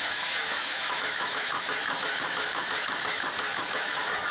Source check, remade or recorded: remade